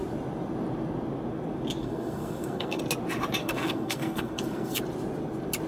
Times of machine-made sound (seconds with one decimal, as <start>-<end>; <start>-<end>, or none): 1.8-2.8; 3.4-4.8